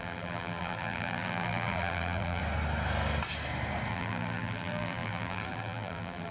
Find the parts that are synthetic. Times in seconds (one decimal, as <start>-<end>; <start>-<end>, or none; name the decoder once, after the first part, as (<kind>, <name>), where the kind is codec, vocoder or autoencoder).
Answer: 0.0-2.4 (vocoder, BigVGAN v2); 3.9-6.3